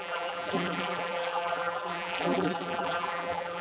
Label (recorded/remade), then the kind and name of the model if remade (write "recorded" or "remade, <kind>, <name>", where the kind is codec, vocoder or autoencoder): remade, vocoder, BigVGAN v2